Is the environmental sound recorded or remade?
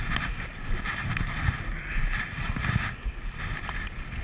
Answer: recorded